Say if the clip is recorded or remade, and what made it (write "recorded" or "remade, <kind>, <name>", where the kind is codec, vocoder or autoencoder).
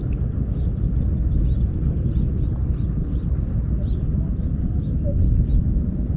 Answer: recorded